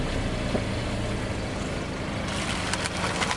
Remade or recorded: recorded